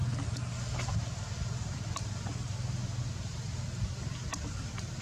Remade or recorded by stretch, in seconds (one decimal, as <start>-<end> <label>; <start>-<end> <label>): 0.0-5.0 recorded